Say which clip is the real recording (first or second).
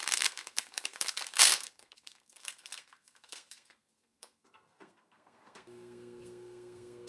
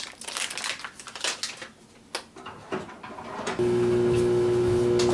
second